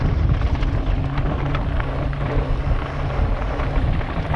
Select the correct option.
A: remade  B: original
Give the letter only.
B